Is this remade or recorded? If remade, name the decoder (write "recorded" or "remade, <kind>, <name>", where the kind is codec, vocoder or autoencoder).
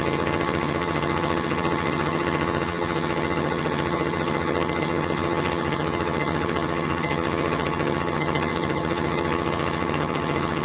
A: remade, vocoder, HiFi-GAN